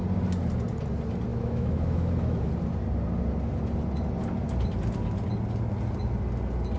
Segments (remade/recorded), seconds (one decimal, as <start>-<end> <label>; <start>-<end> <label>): 0.0-1.3 recorded; 1.3-2.5 remade; 2.5-6.8 recorded